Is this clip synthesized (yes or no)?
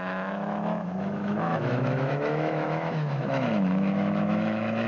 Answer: yes